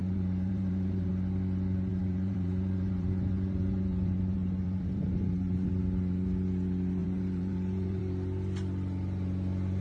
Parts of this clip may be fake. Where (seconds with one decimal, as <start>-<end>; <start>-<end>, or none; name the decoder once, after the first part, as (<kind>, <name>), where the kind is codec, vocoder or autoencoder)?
0.0-1.1 (vocoder, BigVGAN v2); 1.9-5.7; 7.0-8.0